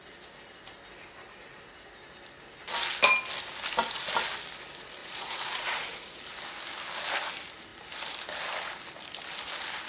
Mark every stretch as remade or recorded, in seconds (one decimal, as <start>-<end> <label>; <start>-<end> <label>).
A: 0.0-5.0 recorded; 5.0-6.2 remade; 6.2-9.9 recorded